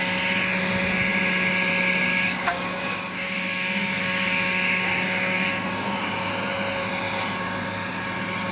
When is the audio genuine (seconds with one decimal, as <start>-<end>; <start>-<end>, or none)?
0.0-2.1; 6.3-8.5